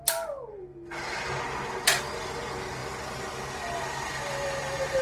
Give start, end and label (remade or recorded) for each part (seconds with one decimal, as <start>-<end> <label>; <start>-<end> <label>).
0.0-5.0 recorded